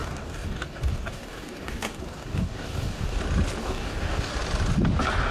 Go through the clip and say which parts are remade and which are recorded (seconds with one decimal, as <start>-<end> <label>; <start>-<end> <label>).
0.0-3.2 remade; 3.2-3.6 recorded; 3.6-4.3 remade; 4.3-5.3 recorded